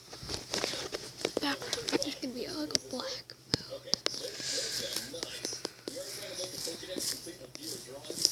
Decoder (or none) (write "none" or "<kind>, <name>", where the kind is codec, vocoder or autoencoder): none